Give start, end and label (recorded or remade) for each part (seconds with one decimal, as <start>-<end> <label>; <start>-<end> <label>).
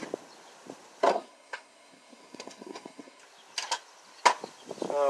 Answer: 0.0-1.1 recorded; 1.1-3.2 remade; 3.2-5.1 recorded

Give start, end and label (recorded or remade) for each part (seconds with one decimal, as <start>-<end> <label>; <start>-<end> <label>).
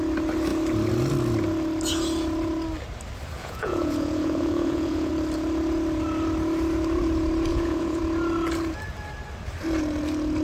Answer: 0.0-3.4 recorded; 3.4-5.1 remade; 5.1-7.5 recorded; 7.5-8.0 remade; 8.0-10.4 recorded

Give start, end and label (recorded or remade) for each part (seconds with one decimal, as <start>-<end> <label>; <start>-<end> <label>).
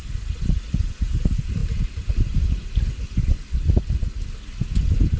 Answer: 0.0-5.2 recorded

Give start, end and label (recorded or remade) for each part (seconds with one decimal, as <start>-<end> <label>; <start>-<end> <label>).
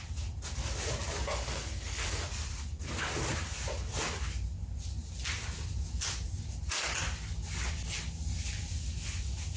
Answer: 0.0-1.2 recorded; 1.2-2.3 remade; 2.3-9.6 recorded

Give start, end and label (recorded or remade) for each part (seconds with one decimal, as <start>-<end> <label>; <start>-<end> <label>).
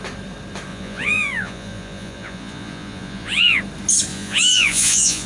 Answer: 0.0-0.7 recorded; 0.7-3.6 remade; 3.6-4.1 recorded; 4.1-5.3 remade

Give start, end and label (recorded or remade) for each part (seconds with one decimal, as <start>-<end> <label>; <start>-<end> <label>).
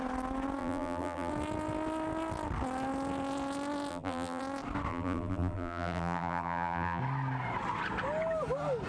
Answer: 0.0-0.6 recorded; 0.6-1.3 remade; 1.3-3.9 recorded; 3.9-4.4 remade; 4.4-4.9 recorded; 4.9-7.0 remade; 7.0-8.9 recorded